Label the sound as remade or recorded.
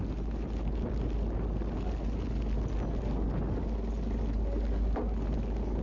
recorded